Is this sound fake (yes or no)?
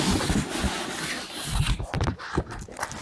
no